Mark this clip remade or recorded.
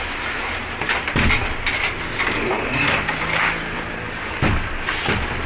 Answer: recorded